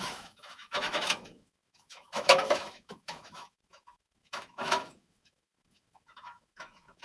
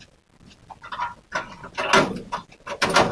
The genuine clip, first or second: second